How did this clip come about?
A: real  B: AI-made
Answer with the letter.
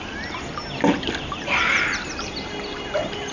A